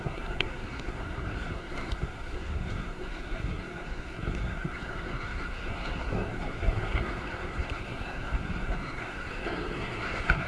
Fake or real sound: fake